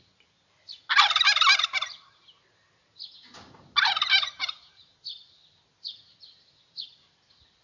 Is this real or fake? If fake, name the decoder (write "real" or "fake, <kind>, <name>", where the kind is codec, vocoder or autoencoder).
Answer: real